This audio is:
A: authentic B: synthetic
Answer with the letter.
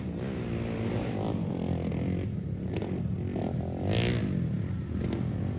A